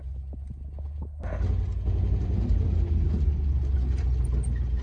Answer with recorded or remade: recorded